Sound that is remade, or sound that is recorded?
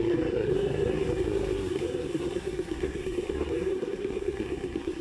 remade